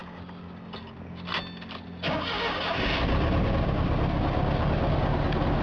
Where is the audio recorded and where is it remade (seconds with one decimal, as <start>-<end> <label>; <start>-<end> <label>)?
0.0-5.6 recorded